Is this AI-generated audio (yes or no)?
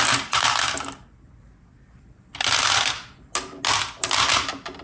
no